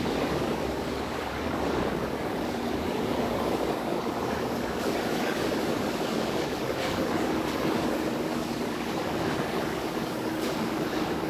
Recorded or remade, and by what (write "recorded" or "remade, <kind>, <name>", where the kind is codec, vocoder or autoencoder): remade, codec, DAC